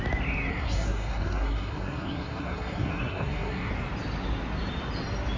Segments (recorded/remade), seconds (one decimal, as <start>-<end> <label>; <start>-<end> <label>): 0.0-0.5 recorded; 0.5-3.7 remade; 3.7-5.4 recorded